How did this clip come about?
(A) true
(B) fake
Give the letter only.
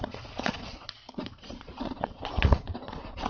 B